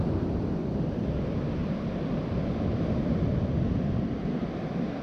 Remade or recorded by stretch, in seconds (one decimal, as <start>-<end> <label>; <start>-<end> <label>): 0.0-5.0 recorded